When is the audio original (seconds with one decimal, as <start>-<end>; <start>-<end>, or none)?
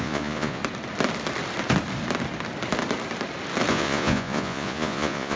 0.6-3.7